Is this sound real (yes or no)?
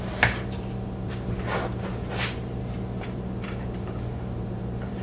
no